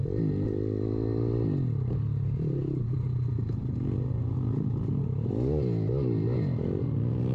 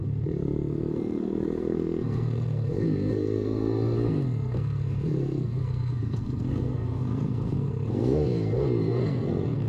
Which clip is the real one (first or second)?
first